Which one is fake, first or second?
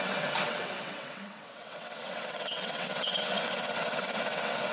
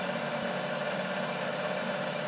first